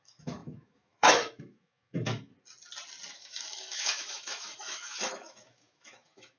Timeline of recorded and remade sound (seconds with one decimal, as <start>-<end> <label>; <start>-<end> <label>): 0.0-2.3 remade; 2.3-3.1 recorded; 3.1-6.4 remade